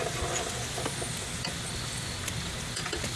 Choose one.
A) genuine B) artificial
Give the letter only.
A